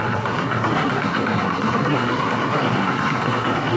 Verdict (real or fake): fake